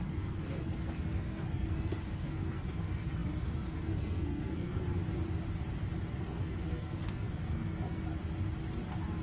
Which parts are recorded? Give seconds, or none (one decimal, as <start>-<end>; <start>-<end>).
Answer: 4.9-6.2; 8.0-9.2